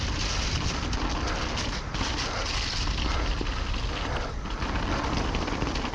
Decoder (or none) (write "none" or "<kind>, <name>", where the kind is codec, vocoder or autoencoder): none